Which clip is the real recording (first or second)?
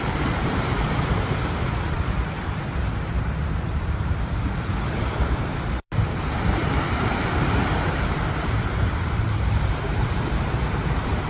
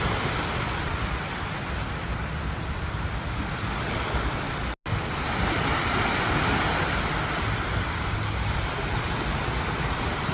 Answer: second